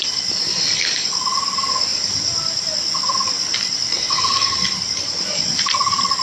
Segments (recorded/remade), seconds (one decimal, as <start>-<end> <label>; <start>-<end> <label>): 0.0-6.2 recorded